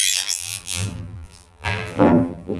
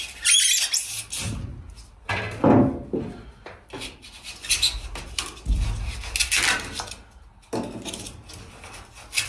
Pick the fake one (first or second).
first